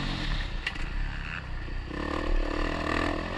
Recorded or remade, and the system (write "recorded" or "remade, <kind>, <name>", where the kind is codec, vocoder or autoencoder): recorded